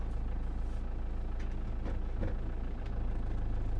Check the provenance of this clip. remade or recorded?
recorded